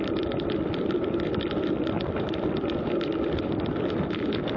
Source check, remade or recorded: remade